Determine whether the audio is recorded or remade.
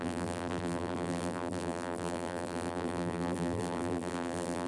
remade